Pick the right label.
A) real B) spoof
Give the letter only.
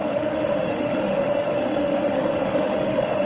B